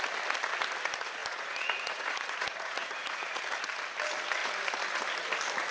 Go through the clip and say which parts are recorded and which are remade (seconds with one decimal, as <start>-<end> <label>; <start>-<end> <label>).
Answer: 0.0-1.2 recorded; 1.2-3.4 remade; 3.4-5.7 recorded